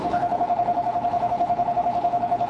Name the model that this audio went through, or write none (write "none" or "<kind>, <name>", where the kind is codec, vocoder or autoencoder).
codec, HILCodec